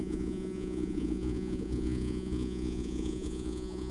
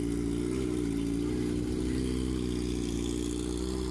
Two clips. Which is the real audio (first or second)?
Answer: second